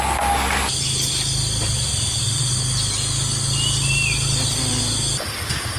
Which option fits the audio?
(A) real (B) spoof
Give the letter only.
A